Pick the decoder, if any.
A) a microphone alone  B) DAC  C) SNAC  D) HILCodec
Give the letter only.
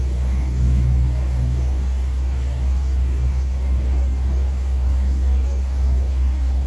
B